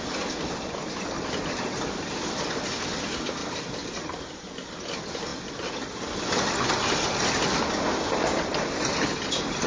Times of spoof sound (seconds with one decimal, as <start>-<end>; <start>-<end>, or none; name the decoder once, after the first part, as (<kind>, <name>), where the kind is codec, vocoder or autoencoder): 3.4-4.3 (vocoder, BigVGAN v2); 5.3-7.2